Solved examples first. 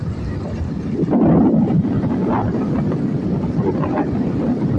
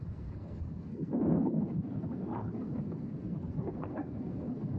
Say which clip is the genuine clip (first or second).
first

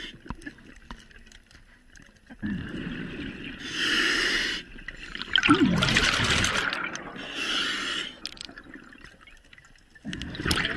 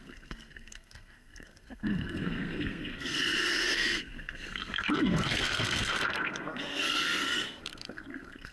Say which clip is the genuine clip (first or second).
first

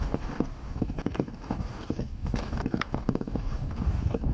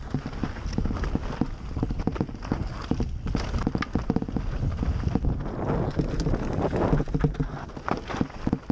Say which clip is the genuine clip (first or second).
second